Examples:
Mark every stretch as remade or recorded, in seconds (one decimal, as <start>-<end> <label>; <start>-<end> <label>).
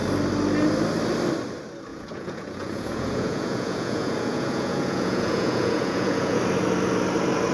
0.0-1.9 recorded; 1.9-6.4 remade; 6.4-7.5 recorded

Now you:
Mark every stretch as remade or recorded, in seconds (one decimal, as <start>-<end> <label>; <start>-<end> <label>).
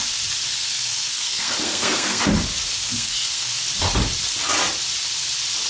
0.0-0.5 recorded; 0.5-2.2 remade; 2.2-2.8 recorded; 2.8-3.6 remade; 3.6-5.7 recorded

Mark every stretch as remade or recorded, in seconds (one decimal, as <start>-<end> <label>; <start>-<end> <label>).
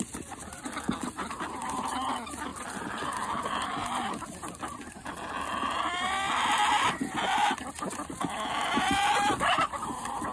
0.0-10.3 recorded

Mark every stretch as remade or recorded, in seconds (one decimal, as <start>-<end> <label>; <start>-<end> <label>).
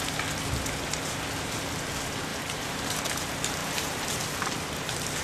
0.0-2.3 recorded; 2.3-3.0 remade; 3.0-3.6 recorded; 3.6-4.1 remade; 4.1-5.2 recorded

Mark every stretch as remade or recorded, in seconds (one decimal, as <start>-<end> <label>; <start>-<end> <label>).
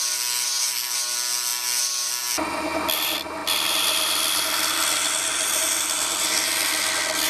0.0-7.3 recorded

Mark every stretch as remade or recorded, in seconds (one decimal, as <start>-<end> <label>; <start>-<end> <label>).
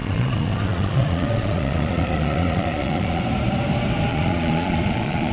0.0-3.2 remade; 3.2-4.1 recorded; 4.1-5.3 remade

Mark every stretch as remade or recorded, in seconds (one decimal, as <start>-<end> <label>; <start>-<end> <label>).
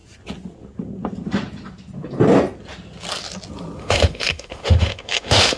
0.0-3.8 recorded; 3.8-5.6 remade